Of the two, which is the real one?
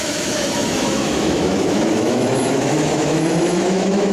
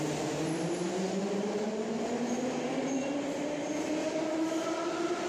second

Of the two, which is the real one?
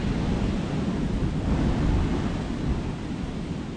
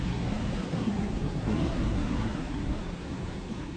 first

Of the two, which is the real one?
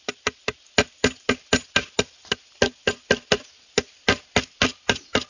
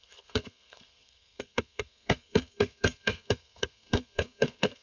first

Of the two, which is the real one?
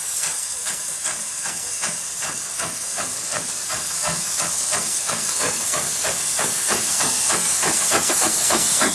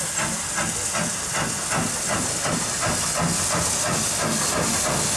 second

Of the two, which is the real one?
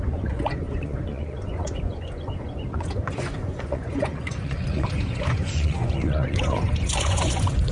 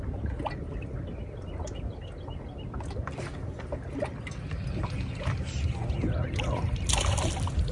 second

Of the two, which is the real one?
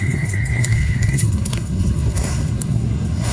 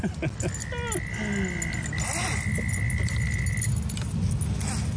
second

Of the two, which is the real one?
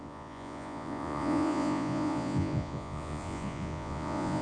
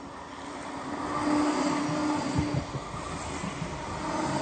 second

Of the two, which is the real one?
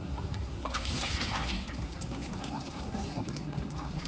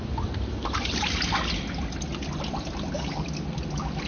second